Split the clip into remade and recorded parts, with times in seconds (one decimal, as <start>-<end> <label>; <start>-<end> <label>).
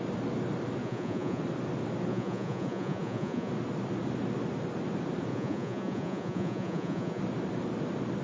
0.0-0.8 recorded; 0.8-1.4 remade; 1.4-2.1 recorded; 2.1-3.5 remade; 3.5-5.3 recorded; 5.3-7.2 remade; 7.2-8.2 recorded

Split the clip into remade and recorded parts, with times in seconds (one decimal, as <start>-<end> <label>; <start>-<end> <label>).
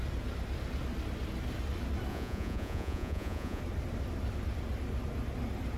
0.0-2.1 recorded; 2.1-3.6 remade; 3.6-5.8 recorded